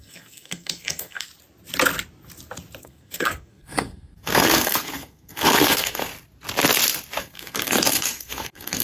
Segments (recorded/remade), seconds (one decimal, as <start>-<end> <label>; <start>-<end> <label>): 0.0-1.3 remade; 1.3-2.8 recorded; 2.8-6.1 remade; 6.1-7.2 recorded; 7.2-8.8 remade